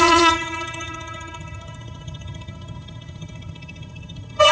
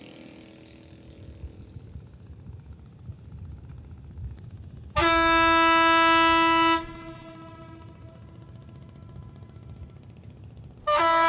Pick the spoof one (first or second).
first